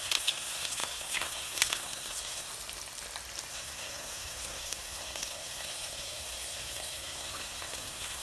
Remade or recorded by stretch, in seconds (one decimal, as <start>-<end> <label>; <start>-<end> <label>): 0.0-2.5 remade; 2.5-3.5 recorded; 3.5-8.2 remade